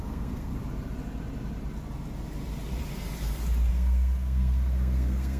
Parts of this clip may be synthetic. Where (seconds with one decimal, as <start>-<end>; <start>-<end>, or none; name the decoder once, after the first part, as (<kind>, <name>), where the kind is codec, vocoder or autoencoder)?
0.0-0.5 (codec, SNAC); 3.7-5.4